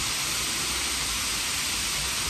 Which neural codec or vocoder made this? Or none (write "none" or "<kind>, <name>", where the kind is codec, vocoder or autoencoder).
none